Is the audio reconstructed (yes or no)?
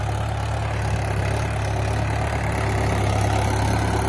no